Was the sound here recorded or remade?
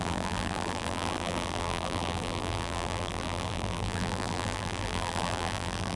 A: remade